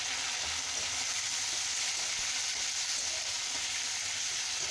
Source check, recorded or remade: recorded